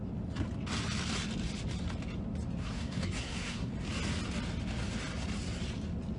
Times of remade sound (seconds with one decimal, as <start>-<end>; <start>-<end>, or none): 2.6-3.7

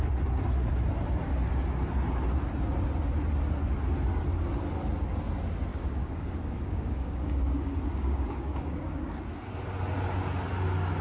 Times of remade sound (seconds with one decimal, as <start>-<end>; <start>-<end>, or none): 5.7-9.2